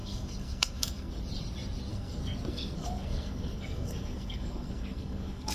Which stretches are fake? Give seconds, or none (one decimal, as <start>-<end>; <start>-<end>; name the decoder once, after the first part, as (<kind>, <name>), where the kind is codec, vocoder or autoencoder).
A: 0.0-1.2 (codec, SNAC); 1.9-5.5